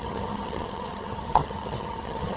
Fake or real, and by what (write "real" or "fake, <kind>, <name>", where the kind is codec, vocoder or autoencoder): fake, vocoder, HiFi-GAN